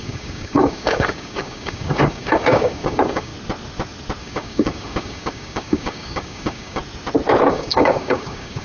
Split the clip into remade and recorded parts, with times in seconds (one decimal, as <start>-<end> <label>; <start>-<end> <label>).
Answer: 0.0-3.3 remade; 3.3-4.2 recorded; 4.2-6.8 remade; 6.8-7.5 recorded; 7.5-8.6 remade